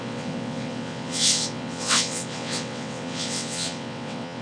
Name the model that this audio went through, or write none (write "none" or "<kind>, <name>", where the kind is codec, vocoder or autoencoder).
vocoder, WaveNeXt